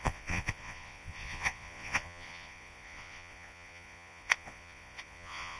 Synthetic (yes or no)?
yes